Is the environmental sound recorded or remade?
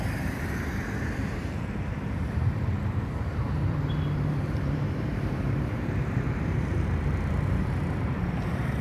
remade